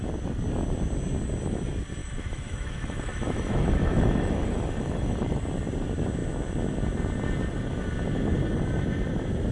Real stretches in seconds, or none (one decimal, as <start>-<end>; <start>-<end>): 0.0-2.0; 5.4-9.5